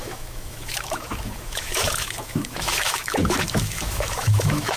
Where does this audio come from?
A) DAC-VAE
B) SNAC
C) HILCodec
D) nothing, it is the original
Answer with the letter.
A